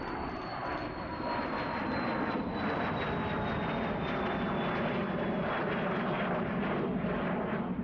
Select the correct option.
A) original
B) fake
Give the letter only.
A